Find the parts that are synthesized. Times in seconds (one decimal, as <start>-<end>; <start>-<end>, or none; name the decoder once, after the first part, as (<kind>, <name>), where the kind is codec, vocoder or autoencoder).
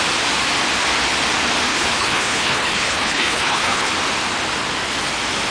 1.7-3.9 (codec, HILCodec)